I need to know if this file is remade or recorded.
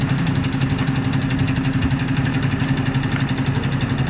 recorded